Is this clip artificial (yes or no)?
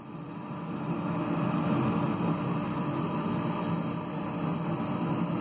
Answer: no